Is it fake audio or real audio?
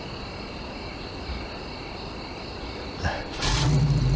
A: real